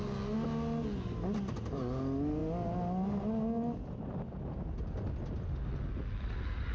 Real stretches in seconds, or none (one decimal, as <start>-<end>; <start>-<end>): 0.0-6.7